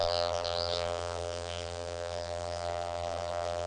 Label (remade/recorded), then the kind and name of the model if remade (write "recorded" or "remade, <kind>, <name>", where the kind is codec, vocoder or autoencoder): remade, vocoder, BigVGAN v2